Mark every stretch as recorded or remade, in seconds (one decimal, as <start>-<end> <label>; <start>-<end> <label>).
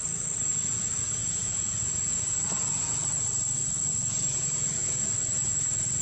0.0-1.2 recorded; 1.2-3.2 remade; 3.2-6.0 recorded